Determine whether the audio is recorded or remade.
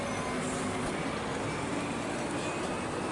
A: recorded